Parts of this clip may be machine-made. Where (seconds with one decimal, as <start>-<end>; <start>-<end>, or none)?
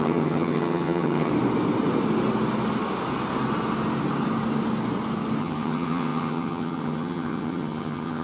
0.0-1.3; 5.4-8.2